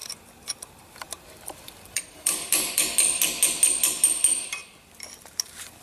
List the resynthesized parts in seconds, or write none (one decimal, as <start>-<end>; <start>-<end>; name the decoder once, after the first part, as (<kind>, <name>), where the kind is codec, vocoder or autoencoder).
0.0-2.9 (vocoder, BigVGAN v2); 4.6-5.8